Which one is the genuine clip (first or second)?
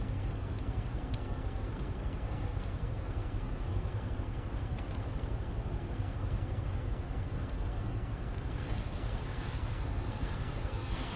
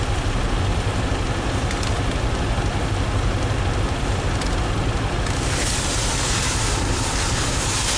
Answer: second